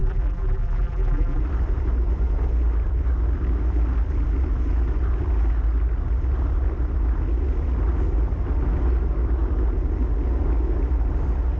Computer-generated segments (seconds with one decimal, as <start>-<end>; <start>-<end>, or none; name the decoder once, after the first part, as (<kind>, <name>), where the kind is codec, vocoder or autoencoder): 0.0-1.4 (vocoder, BigVGAN v2)